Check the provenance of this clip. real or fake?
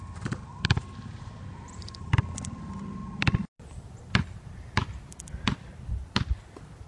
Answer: fake